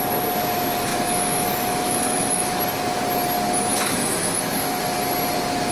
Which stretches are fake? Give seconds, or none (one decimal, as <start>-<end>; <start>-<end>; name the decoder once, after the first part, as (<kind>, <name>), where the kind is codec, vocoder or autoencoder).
0.9-2.6 (autoencoder, DAC-VAE); 3.7-4.8